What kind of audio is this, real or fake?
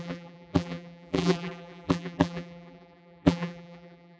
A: fake